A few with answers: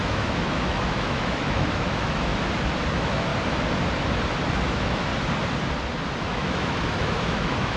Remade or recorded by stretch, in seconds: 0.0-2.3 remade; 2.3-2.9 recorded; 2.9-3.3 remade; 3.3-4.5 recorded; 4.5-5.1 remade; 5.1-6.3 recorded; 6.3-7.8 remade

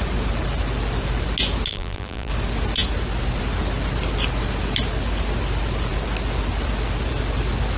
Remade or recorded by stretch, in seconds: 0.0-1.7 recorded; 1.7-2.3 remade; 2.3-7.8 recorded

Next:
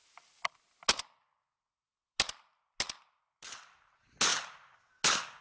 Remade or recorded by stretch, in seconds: 0.0-5.4 recorded